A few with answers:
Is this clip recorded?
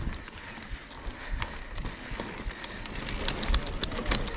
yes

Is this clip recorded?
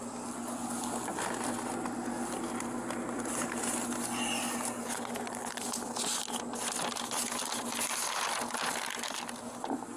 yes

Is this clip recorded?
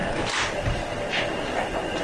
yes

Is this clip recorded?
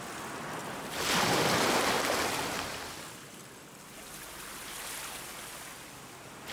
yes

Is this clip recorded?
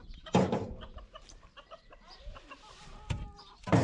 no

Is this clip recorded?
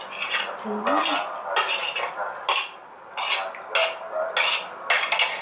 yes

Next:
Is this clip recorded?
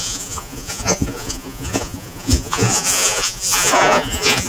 no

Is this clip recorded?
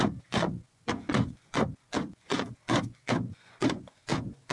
no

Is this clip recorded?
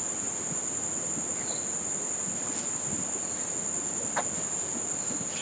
yes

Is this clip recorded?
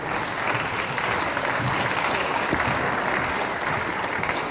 yes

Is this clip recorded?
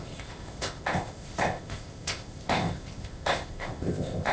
no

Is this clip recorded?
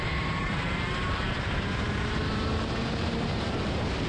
no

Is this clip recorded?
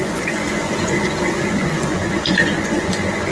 no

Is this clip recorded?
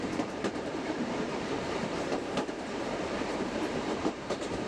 no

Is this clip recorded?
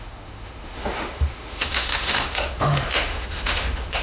no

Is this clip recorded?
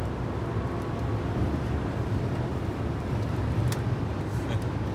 yes